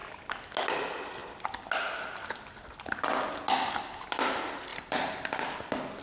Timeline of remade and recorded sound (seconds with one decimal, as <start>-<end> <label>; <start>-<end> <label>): 0.0-4.7 recorded; 4.7-5.4 remade; 5.4-6.0 recorded